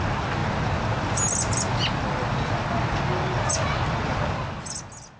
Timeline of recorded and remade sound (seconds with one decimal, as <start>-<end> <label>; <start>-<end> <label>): 0.0-5.2 recorded